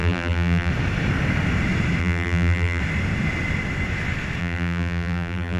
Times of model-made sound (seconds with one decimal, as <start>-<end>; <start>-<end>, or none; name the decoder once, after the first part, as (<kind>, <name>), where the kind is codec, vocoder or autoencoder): 0.0-0.7 (vocoder, BigVGAN v2); 2.0-2.8; 4.4-5.6